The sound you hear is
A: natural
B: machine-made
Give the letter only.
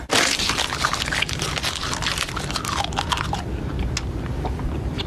A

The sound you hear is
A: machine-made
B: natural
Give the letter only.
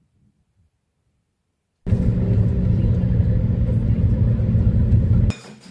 B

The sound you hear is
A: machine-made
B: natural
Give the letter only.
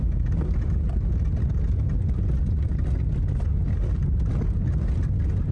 B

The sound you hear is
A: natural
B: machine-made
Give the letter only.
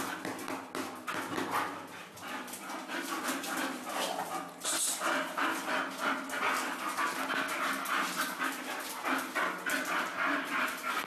A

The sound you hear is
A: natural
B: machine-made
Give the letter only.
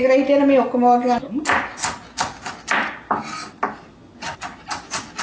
A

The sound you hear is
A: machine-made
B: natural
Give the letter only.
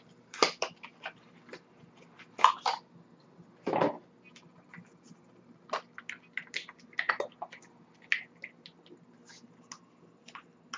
B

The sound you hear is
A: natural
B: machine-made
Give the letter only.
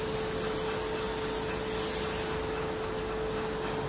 A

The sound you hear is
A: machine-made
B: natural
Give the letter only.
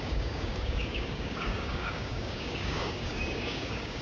A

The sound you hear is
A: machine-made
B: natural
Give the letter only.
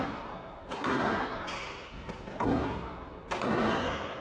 A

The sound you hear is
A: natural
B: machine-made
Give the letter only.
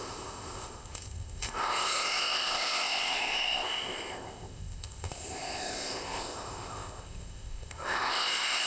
B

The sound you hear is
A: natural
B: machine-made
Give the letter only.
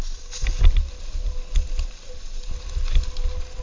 A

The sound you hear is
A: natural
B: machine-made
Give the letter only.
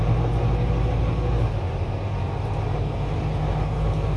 A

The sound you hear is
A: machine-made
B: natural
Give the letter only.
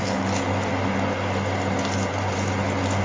B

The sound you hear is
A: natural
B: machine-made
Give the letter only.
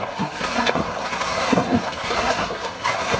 B